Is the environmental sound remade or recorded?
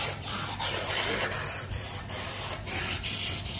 recorded